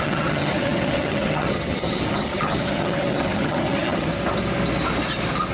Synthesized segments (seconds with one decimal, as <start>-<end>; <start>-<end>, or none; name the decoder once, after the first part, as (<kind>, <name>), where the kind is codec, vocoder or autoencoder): 0.0-4.1 (vocoder, HiFi-GAN)